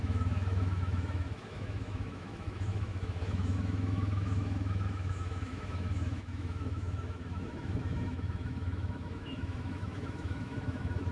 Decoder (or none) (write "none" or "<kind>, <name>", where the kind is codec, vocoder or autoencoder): autoencoder, DAC-VAE